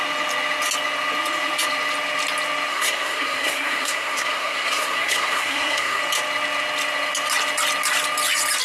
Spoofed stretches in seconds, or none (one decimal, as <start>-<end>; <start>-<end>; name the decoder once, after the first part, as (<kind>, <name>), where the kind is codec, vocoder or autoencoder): 2.7-6.0 (codec, SNAC)